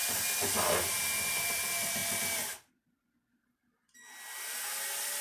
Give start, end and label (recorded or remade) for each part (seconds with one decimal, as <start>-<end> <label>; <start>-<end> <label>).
0.0-5.2 recorded